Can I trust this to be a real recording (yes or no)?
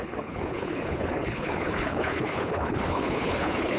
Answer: no